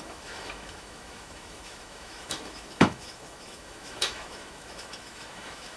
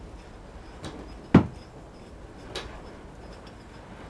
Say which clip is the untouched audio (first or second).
second